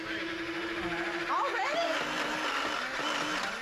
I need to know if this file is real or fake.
real